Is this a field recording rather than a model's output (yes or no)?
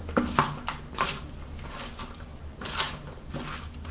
yes